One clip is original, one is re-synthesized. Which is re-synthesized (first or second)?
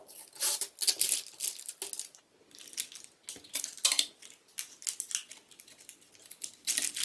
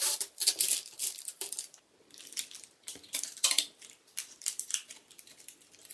second